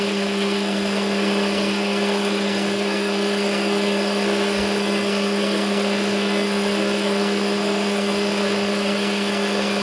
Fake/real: fake